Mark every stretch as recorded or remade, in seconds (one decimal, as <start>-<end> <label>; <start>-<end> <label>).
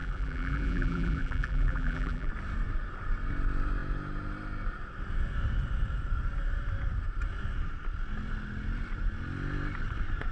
0.0-2.3 remade; 2.3-10.3 recorded